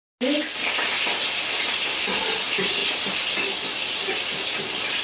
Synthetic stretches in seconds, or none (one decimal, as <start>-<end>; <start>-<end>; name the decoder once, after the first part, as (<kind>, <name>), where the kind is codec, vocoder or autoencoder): none